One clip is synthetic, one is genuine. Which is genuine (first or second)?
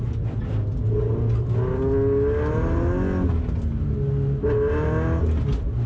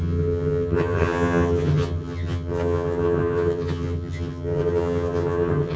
first